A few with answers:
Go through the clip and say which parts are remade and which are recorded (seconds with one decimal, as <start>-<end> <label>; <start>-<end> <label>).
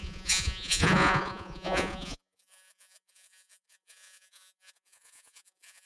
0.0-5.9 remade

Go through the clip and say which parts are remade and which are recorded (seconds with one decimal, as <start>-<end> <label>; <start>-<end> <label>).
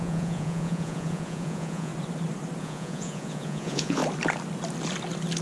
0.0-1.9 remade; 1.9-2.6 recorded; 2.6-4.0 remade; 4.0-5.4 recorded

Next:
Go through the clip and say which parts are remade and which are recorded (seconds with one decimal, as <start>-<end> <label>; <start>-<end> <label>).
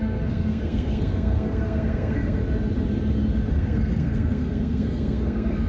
0.0-2.4 remade; 2.4-3.5 recorded; 3.5-5.7 remade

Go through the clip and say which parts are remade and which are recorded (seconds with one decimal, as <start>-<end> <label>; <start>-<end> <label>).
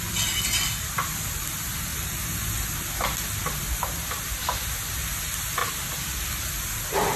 0.0-4.4 recorded; 4.4-4.9 remade; 4.9-7.2 recorded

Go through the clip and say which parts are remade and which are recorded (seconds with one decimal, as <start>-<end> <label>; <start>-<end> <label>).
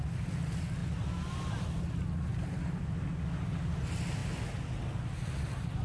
0.0-5.8 recorded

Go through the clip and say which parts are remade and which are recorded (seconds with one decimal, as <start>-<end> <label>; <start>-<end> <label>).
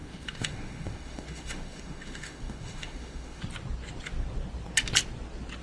0.0-3.4 remade; 3.4-5.6 recorded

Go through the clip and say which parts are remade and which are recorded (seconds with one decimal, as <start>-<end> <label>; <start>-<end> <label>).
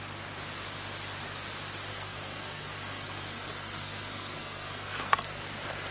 0.0-1.9 recorded; 1.9-5.4 remade; 5.4-5.9 recorded